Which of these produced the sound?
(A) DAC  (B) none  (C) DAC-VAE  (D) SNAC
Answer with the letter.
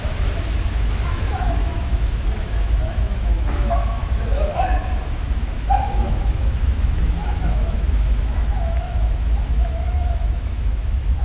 C